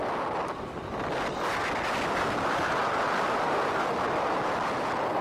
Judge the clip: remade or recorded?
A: recorded